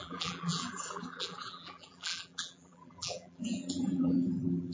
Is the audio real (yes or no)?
no